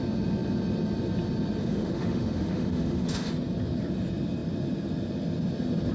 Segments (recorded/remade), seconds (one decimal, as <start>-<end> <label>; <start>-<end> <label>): 0.0-1.6 recorded; 1.6-3.3 remade; 3.3-5.9 recorded